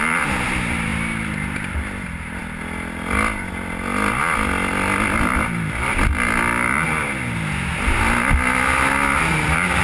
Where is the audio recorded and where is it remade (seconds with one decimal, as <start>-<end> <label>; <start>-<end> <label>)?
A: 0.0-9.8 recorded